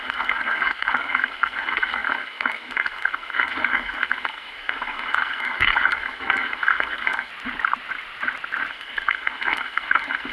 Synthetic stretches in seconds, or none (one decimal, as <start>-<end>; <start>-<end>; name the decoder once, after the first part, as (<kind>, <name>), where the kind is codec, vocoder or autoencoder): 0.0-7.3 (codec, SNAC); 8.7-10.3